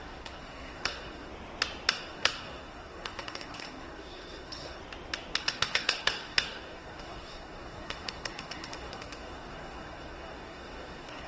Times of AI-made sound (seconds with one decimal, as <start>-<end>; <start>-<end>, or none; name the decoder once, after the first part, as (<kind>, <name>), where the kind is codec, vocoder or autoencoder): 0.0-1.3 (codec, SNAC); 1.9-4.8; 5.4-11.3